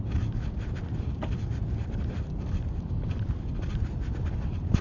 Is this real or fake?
fake